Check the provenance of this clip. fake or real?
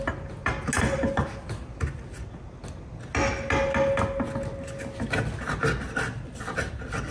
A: real